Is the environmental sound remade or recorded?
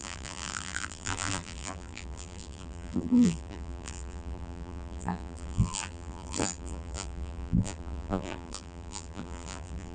remade